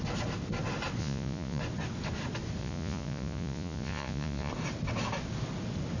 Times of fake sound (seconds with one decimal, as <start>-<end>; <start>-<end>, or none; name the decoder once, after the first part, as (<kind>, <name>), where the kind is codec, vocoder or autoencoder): 1.0-1.6 (vocoder, Vocos); 2.6-4.5